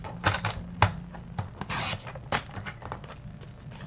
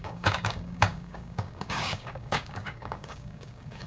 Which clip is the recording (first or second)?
first